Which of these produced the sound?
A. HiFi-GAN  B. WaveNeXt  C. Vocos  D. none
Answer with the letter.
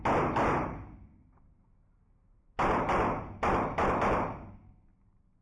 D